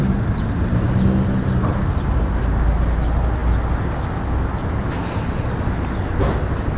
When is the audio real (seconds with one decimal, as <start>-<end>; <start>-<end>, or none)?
0.0-6.8